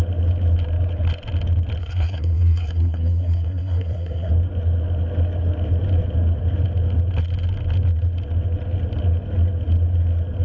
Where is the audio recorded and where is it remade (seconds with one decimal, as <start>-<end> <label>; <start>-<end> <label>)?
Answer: 0.0-1.8 recorded; 1.8-4.3 remade; 4.3-10.4 recorded